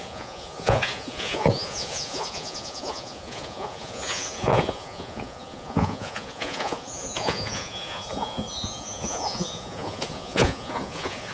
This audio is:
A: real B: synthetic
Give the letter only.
B